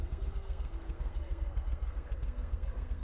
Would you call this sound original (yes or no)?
no